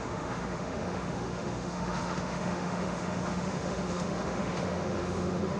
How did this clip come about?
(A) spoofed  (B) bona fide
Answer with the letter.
A